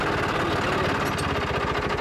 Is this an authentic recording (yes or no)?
yes